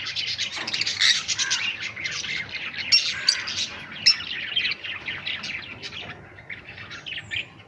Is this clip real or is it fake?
real